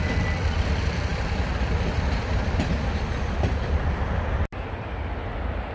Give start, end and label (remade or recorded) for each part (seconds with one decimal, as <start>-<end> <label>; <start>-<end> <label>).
0.0-5.7 recorded

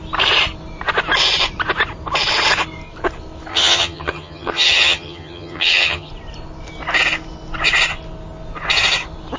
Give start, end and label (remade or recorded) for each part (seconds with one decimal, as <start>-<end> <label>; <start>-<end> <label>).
0.0-3.5 recorded; 3.5-6.1 remade; 6.1-9.4 recorded

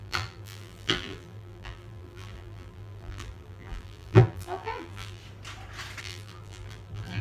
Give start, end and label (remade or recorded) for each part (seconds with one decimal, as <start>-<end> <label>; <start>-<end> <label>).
0.0-5.2 remade; 5.2-6.0 recorded; 6.0-7.2 remade

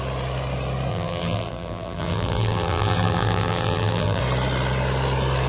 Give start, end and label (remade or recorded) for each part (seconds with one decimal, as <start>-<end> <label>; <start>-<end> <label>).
0.0-0.9 recorded; 0.9-4.2 remade; 4.2-5.5 recorded

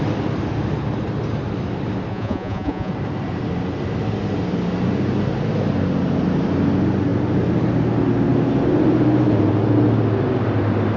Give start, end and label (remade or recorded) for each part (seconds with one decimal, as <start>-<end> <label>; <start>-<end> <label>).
0.0-2.1 recorded; 2.1-2.9 remade; 2.9-11.0 recorded

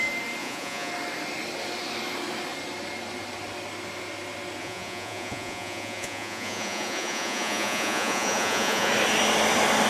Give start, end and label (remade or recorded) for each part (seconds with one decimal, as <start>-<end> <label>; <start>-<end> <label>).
0.0-0.4 recorded; 0.4-0.9 remade; 0.9-4.6 recorded; 4.6-8.9 remade; 8.9-9.9 recorded

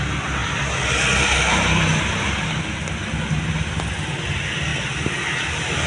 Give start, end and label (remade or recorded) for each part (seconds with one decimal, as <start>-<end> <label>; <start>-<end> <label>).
0.0-5.9 recorded

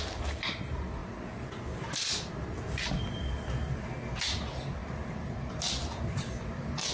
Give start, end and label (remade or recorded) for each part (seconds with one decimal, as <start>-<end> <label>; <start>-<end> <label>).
0.0-6.9 recorded